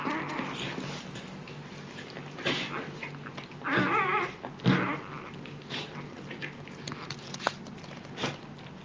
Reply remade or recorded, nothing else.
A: recorded